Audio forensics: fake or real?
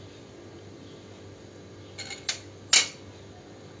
real